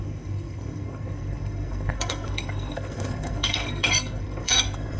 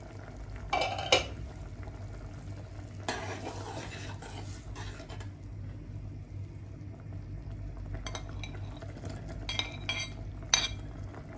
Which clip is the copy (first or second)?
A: first